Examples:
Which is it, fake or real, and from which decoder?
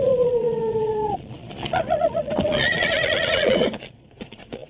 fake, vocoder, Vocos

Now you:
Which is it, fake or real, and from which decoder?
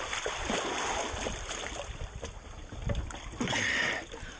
fake, vocoder, BigVGAN v2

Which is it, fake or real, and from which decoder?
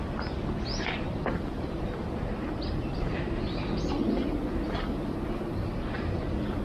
real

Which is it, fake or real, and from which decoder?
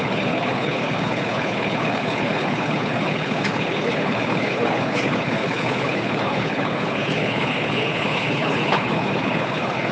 fake, codec, HILCodec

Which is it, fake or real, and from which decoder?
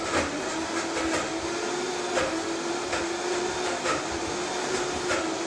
real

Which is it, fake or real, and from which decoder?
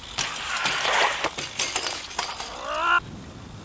real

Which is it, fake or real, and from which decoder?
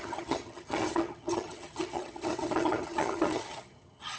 fake, vocoder, HiFi-GAN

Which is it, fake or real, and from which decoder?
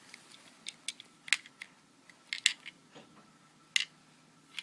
real